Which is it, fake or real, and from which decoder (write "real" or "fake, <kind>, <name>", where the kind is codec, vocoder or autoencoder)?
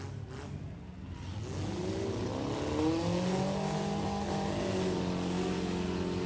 real